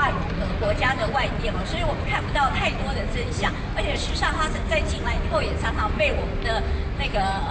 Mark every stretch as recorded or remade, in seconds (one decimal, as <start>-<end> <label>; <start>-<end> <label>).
0.0-7.5 recorded